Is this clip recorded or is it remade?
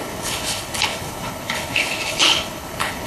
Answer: remade